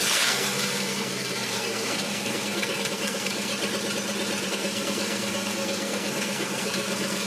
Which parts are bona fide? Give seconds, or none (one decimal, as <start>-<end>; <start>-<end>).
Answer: 3.5-4.5